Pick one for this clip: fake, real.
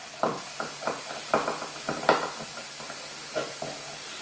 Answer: real